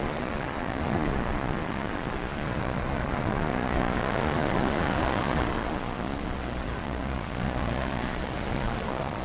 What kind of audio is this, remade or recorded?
remade